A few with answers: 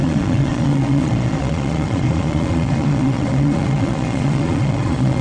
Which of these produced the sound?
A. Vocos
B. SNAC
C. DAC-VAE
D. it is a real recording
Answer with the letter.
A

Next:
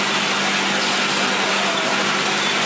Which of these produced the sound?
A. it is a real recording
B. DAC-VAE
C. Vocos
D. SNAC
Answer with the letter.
A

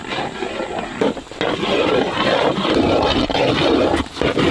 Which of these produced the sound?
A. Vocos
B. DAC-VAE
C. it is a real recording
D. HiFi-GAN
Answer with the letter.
C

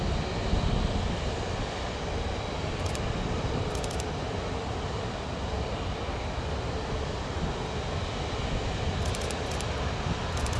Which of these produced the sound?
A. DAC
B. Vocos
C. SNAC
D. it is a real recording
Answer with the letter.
D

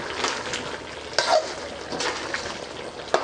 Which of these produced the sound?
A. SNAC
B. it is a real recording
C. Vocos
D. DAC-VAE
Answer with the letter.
B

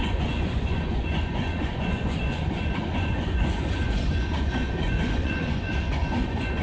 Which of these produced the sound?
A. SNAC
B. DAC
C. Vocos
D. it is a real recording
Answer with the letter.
C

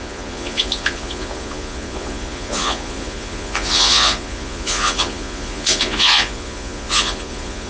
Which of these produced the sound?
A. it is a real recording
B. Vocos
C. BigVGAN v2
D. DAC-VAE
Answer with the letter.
B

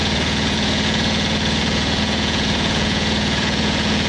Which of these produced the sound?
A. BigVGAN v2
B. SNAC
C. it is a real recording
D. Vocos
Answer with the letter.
D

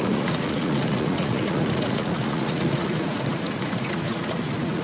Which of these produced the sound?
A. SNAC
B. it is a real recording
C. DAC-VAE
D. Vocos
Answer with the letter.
D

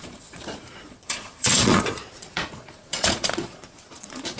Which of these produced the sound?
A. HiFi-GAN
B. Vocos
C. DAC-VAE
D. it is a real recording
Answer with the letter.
B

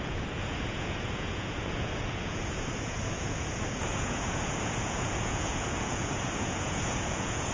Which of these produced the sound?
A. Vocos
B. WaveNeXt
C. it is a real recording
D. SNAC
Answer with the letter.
A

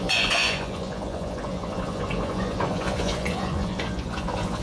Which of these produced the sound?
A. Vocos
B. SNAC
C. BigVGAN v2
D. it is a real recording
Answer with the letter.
A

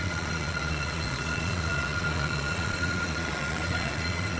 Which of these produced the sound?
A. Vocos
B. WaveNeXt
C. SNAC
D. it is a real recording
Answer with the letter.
A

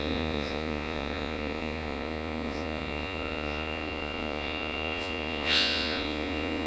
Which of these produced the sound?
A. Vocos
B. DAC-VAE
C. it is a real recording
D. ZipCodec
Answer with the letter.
A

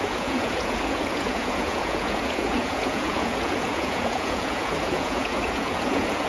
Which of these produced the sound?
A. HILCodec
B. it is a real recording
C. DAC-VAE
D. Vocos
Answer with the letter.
D